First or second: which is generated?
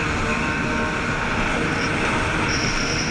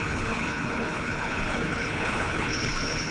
second